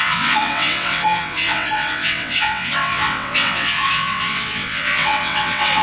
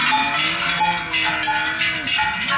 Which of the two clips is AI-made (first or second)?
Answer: first